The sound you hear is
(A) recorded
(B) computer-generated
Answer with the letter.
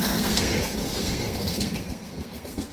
B